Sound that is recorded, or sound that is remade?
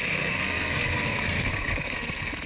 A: remade